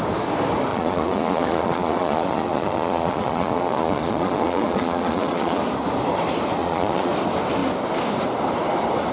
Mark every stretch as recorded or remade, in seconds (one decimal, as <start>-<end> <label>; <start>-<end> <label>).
0.0-0.7 recorded; 0.7-5.6 remade; 5.6-6.6 recorded; 6.6-7.1 remade; 7.1-9.1 recorded